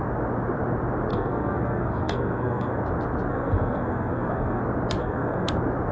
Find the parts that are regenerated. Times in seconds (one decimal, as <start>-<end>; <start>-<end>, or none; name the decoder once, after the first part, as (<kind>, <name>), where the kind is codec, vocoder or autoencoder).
1.1-2.8 (codec, SNAC); 3.3-4.6; 5.0-5.5